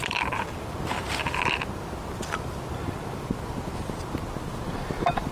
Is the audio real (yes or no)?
yes